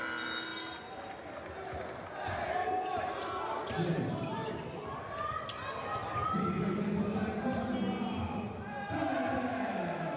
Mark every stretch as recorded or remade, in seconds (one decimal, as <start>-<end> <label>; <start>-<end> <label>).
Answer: 0.0-10.2 recorded